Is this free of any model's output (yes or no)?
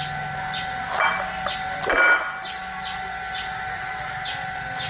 yes